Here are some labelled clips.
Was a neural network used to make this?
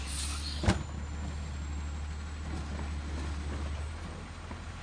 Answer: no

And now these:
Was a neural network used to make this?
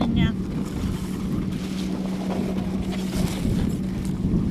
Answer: no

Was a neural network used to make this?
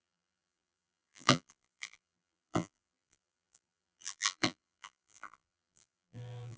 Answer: yes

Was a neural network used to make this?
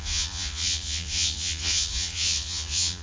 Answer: yes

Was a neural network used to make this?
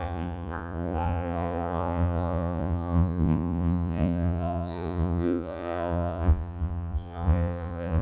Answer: yes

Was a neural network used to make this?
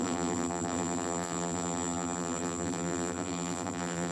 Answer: yes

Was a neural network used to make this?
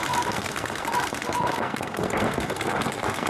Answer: yes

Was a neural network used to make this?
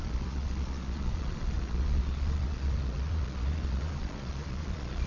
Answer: yes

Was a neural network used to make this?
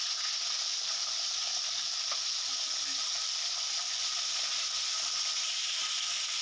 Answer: no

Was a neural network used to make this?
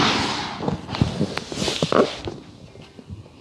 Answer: no